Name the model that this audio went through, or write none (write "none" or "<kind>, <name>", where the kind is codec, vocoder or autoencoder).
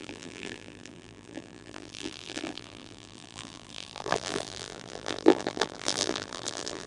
vocoder, BigVGAN v2